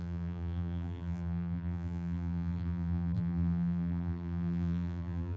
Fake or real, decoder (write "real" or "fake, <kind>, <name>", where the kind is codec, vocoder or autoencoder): fake, vocoder, BigVGAN v2